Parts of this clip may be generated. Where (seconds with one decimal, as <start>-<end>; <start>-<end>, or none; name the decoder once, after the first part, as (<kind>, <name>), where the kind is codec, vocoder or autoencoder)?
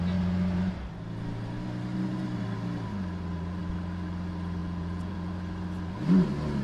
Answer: 4.6-5.3 (vocoder, Vocos)